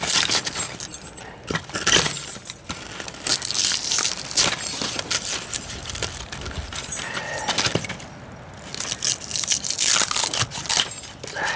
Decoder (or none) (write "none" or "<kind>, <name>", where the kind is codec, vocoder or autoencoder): none